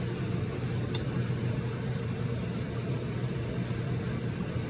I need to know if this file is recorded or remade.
recorded